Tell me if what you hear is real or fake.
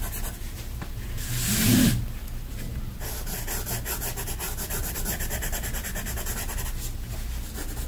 real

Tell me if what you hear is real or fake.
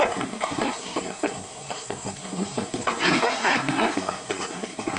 fake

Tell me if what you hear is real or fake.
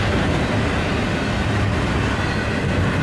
real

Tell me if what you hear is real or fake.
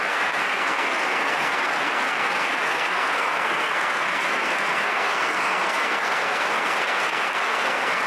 fake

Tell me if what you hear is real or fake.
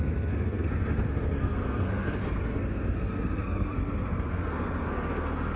fake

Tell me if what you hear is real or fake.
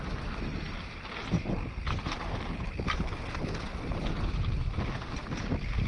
real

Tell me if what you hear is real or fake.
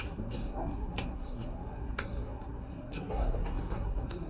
fake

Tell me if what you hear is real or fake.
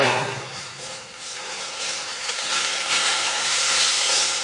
fake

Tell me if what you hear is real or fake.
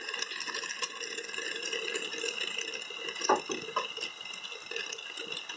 real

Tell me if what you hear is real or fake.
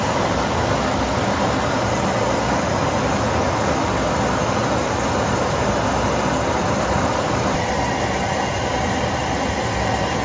real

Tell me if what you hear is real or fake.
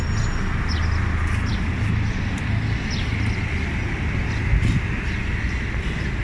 real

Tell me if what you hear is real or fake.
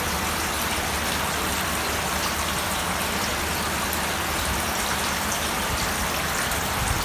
real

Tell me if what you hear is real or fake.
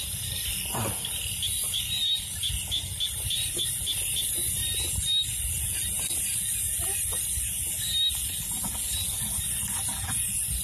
real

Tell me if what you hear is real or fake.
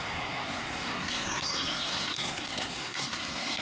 fake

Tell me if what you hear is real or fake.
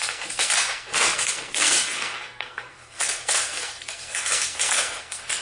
fake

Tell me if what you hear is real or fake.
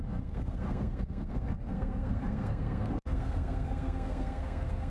fake